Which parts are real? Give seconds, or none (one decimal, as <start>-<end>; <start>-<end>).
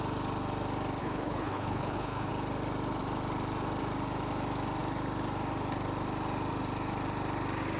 0.0-1.0; 2.3-7.8